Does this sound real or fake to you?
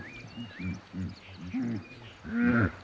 real